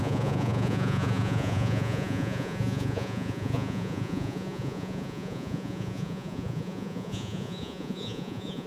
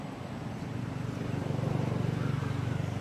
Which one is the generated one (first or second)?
first